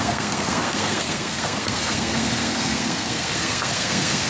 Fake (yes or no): yes